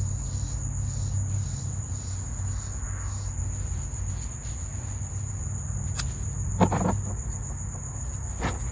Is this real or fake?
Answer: real